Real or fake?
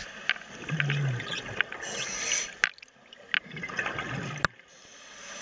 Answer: real